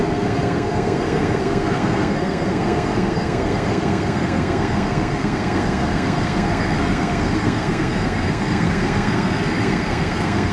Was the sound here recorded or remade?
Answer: remade